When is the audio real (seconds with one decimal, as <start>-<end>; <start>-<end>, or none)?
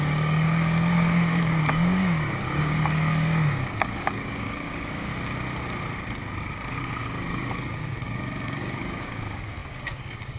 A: 5.1-6.5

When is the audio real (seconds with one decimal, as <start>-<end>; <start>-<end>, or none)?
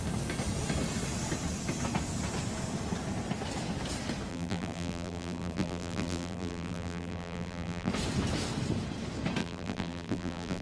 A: 0.0-4.3; 7.9-9.4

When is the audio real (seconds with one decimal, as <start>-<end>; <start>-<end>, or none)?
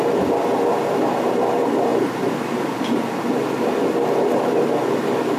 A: 0.0-1.9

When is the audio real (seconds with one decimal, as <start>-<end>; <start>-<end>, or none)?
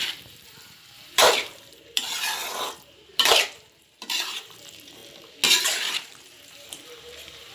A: 5.0-5.6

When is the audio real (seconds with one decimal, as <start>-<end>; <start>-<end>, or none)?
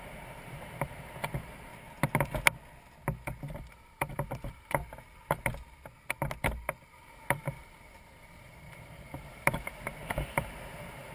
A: 1.7-3.4; 4.8-6.9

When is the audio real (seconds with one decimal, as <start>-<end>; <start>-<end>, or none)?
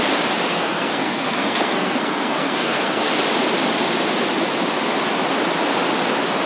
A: 0.0-0.5; 3.1-6.5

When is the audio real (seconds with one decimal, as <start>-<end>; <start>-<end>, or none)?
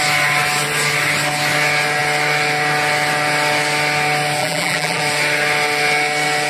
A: 0.0-4.4; 5.0-6.5